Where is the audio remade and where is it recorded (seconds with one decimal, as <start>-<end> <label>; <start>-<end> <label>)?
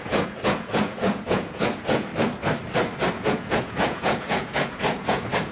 0.0-2.1 remade; 2.1-3.1 recorded; 3.1-5.5 remade